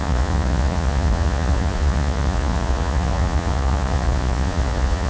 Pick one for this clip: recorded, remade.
remade